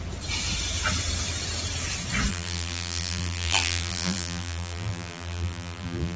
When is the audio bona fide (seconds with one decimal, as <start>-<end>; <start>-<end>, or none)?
0.0-2.3

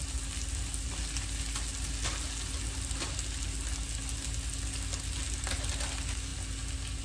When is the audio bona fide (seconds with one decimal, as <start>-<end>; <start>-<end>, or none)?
0.0-7.0

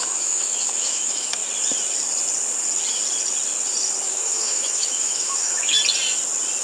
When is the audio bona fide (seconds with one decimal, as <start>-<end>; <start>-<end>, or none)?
1.4-4.0; 5.8-6.6

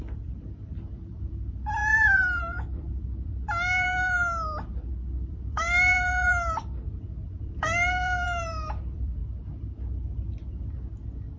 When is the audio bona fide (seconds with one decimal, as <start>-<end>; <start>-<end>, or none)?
9.2-10.5

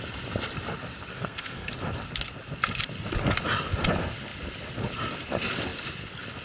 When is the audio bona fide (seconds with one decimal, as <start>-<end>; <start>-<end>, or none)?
0.0-1.1; 1.7-6.4

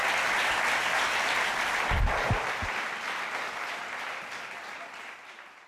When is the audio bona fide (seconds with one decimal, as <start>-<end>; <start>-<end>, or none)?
0.0-2.0